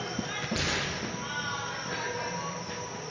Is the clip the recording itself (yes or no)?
yes